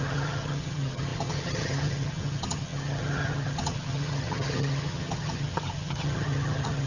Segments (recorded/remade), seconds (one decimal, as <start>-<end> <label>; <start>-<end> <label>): 0.0-6.9 remade